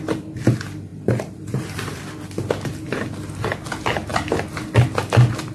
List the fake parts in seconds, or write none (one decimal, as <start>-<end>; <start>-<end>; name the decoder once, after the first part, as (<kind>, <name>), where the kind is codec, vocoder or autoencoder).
0.9-2.0 (vocoder, BigVGAN v2)